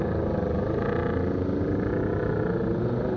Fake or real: real